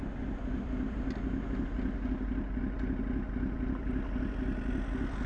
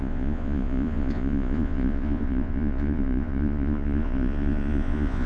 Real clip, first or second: first